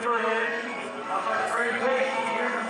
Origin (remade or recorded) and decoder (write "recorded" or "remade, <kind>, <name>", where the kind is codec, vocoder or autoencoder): remade, codec, SNAC